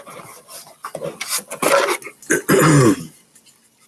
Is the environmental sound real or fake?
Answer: real